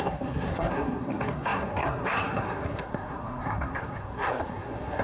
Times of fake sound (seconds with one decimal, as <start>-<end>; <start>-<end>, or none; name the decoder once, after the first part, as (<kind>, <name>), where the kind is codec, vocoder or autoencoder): 0.0-5.0 (codec, SNAC)